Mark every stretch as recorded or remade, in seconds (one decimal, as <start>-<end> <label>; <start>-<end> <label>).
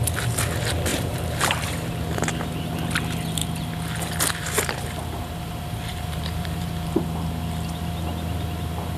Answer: 0.0-0.9 recorded; 0.9-1.9 remade; 1.9-5.9 recorded; 5.9-6.7 remade; 6.7-9.0 recorded